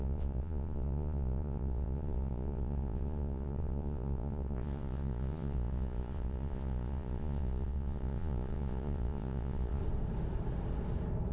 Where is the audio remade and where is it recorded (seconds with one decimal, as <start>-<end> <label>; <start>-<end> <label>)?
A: 0.0-9.8 remade; 9.8-11.3 recorded